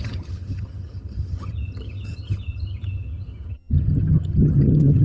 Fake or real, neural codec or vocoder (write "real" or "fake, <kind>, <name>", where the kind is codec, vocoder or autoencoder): fake, vocoder, HiFi-GAN